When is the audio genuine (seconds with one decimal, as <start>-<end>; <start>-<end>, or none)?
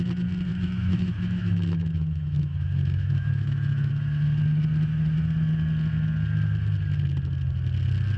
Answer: 0.0-0.5; 3.9-8.2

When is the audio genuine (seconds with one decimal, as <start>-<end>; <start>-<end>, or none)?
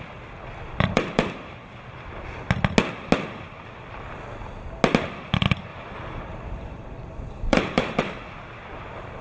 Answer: 0.0-0.7; 1.6-5.7; 8.0-9.2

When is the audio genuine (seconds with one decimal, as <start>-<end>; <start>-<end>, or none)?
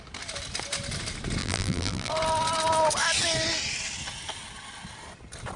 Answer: 0.0-1.4; 2.1-5.6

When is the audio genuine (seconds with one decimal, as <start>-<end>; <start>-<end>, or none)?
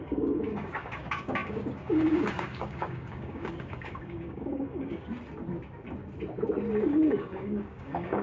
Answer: 5.1-7.1